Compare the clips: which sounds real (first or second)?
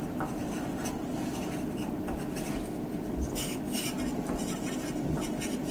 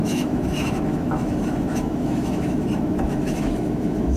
first